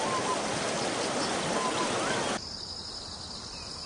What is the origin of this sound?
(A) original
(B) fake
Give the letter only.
A